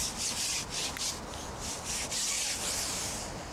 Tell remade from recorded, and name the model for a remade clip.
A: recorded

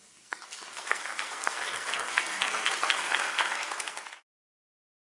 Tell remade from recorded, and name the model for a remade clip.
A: remade, codec, SNAC